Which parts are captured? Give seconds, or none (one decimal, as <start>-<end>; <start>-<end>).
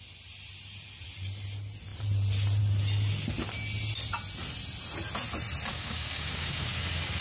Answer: 0.0-5.7; 6.7-7.2